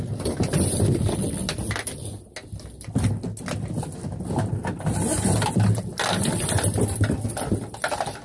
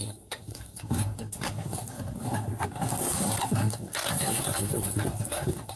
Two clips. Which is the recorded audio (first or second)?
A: first